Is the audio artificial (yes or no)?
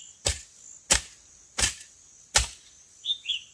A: no